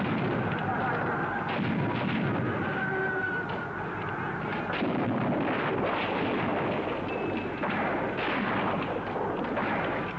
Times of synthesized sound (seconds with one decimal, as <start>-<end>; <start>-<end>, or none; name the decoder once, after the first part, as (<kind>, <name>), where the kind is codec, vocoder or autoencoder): none